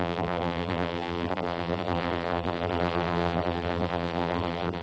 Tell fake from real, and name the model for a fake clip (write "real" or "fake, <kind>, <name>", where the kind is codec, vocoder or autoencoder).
fake, vocoder, BigVGAN v2